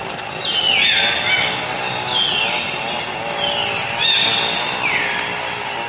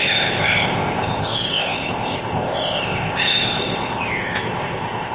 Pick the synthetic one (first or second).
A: second